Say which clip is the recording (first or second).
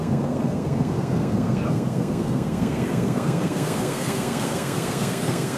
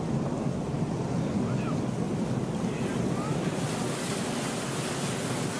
second